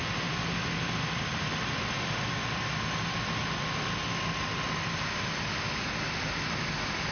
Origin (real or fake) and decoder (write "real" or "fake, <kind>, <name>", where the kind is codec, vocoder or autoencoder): real